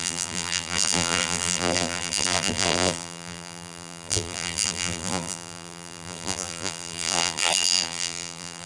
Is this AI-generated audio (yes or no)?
yes